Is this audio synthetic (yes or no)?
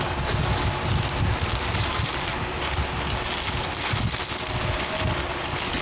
no